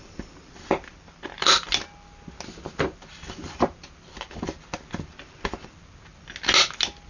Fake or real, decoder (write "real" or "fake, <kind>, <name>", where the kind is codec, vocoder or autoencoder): real